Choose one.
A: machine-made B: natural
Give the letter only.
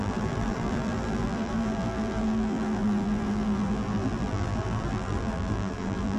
A